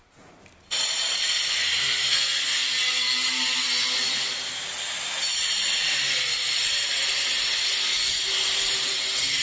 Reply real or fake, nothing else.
real